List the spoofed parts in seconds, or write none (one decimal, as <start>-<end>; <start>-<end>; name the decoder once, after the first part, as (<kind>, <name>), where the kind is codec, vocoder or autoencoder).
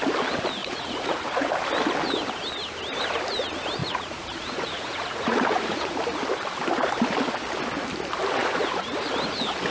0.6-1.5 (vocoder, Vocos); 3.8-6.0; 8.4-9.0